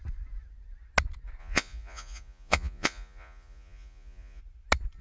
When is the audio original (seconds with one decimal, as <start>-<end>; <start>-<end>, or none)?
0.0-1.4; 4.4-5.0